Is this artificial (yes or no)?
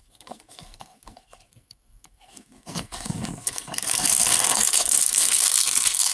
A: yes